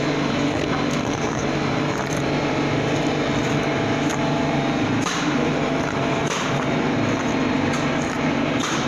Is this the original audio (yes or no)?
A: no